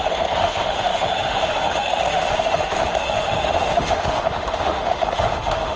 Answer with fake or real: fake